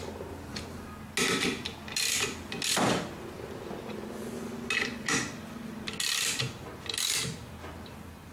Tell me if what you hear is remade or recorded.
recorded